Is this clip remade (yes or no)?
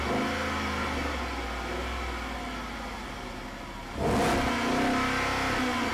no